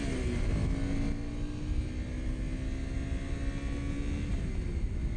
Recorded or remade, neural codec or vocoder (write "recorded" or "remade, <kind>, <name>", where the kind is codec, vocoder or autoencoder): recorded